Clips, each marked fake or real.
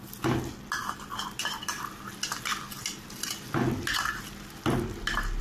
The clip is real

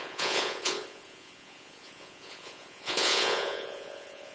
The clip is fake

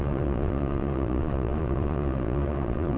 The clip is fake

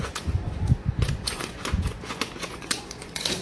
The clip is fake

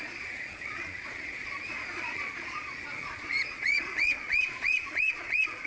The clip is fake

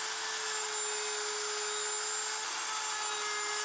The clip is real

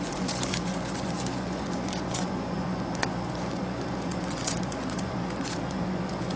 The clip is fake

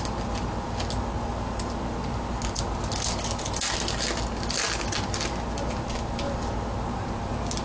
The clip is real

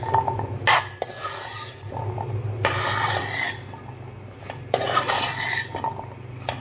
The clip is real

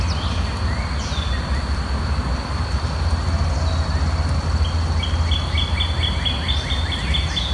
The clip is real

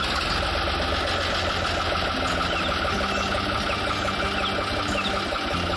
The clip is real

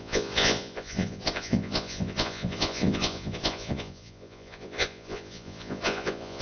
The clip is fake